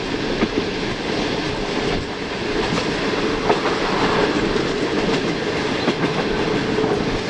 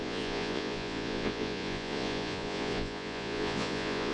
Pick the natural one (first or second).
first